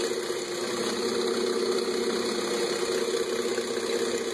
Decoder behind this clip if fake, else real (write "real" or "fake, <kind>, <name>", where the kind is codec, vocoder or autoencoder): real